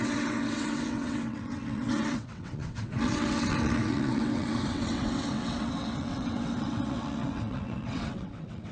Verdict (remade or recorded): remade